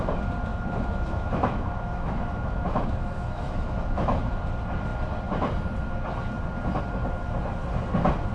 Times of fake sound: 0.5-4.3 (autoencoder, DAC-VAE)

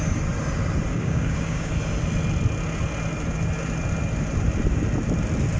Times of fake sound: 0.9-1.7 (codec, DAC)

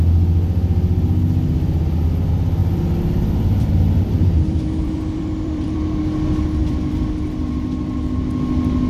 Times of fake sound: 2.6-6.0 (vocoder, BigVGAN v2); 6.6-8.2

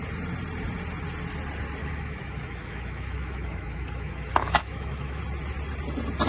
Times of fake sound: 1.8-5.2 (autoencoder, DAC-VAE)

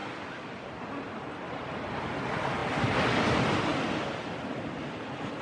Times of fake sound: none

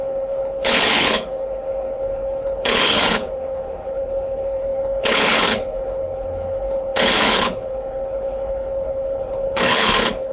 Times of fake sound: 0.0-10.3 (codec, HILCodec)

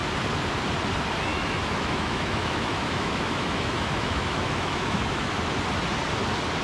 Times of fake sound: 1.3-5.3 (autoencoder, DAC-VAE)